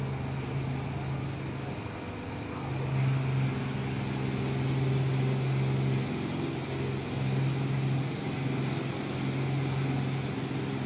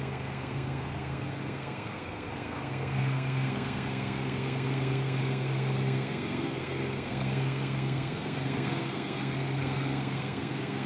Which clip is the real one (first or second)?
first